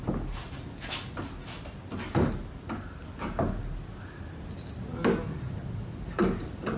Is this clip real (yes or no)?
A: yes